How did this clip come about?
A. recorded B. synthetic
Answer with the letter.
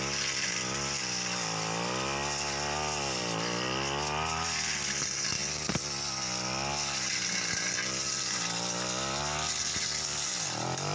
A